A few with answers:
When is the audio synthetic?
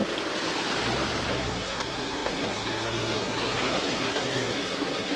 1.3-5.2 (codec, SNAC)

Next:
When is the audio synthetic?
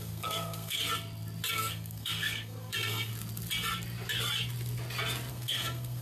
0.0-0.8 (codec, SNAC); 1.5-3.1; 5.3-6.0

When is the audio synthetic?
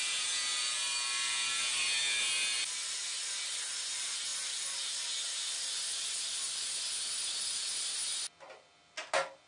none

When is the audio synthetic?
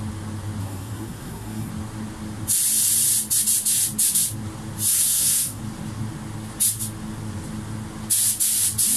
0.6-1.7 (codec, SNAC); 4.9-5.6